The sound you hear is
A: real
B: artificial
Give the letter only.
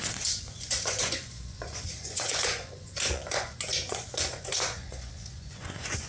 B